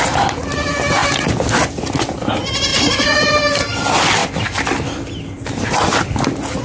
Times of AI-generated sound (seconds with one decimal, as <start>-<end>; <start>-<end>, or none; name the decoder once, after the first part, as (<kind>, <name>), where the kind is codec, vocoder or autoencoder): 2.7-3.3 (vocoder, Vocos)